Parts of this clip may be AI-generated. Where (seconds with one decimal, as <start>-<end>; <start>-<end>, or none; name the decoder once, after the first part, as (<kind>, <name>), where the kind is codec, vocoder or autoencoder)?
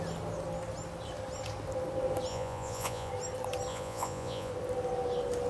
2.3-3.1 (vocoder, Vocos); 3.7-4.5